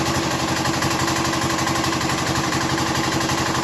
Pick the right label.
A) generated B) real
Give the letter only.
B